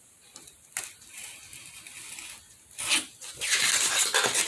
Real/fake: real